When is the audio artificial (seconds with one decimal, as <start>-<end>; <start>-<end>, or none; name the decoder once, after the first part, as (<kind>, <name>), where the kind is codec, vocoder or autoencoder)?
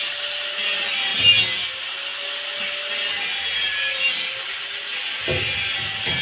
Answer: none